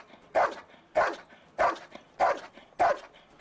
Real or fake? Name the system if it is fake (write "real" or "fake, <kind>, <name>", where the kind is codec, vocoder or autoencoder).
real